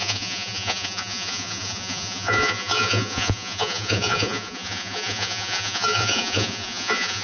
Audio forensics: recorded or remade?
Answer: remade